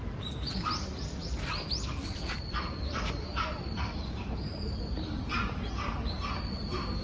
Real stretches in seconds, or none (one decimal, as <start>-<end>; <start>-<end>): 0.0-1.2; 5.4-7.0